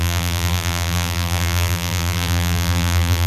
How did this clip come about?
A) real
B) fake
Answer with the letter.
B